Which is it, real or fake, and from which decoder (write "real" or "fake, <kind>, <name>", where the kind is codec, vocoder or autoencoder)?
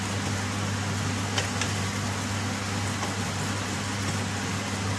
real